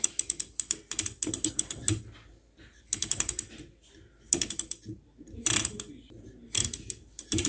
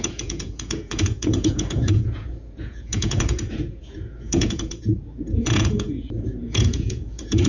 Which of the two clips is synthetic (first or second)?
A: second